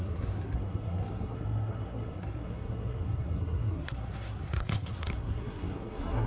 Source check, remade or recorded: remade